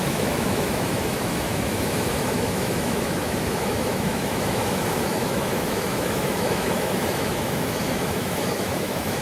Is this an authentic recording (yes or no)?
no